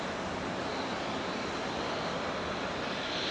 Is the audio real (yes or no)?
yes